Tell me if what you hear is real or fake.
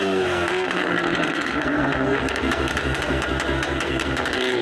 fake